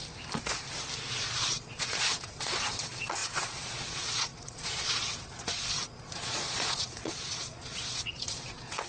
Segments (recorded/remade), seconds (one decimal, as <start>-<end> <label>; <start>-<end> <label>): 0.0-1.1 recorded; 1.1-8.9 remade